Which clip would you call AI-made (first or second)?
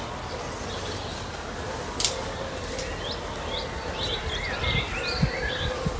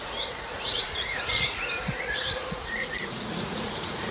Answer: second